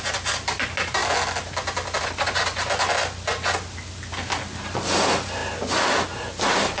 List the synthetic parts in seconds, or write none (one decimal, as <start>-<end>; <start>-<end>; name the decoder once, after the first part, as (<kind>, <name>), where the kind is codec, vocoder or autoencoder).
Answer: none